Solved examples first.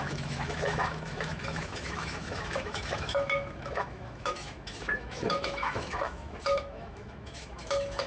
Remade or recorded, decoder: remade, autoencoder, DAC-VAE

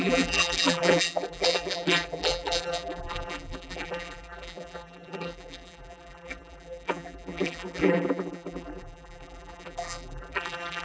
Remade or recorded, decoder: remade, vocoder, BigVGAN v2